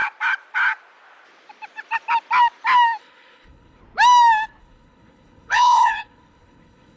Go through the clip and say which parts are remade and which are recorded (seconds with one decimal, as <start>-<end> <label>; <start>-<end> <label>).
0.0-3.0 recorded; 3.0-3.8 remade; 3.8-4.6 recorded; 4.6-7.0 remade